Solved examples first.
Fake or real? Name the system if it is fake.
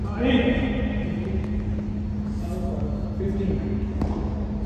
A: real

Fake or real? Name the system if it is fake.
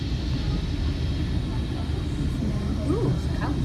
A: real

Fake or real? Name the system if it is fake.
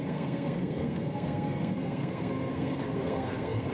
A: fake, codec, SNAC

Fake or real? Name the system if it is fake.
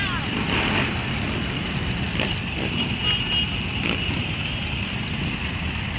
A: real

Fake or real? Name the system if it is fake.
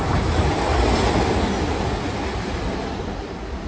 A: real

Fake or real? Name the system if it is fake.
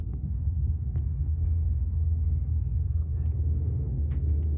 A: fake, codec, SNAC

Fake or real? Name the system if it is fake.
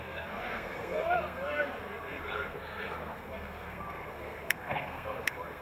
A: fake, codec, SNAC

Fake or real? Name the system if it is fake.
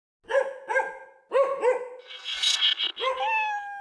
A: real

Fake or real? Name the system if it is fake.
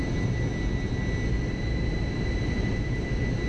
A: real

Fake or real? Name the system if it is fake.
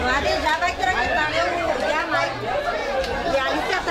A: real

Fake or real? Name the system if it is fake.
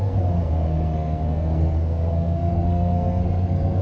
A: fake, codec, SNAC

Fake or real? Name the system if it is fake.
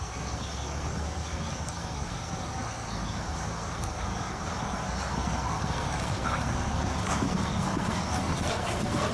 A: fake, codec, SNAC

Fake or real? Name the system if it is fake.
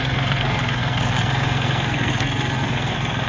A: fake, codec, SNAC